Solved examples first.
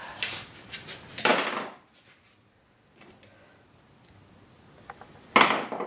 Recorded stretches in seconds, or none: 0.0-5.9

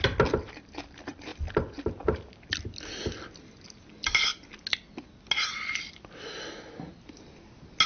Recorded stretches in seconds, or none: 0.0-7.9

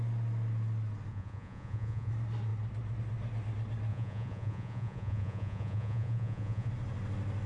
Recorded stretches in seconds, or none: 0.0-1.1; 2.1-3.9; 6.7-7.5

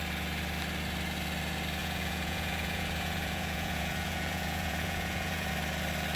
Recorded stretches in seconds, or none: 0.0-1.8; 5.5-6.2

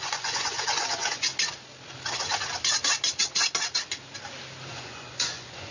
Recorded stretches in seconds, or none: 1.3-4.7

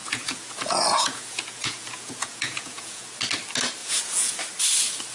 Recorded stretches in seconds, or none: 3.1-3.8; 4.4-5.1